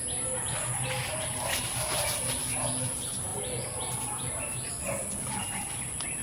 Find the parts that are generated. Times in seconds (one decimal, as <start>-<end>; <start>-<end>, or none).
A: none